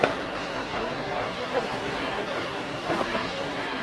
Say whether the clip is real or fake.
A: fake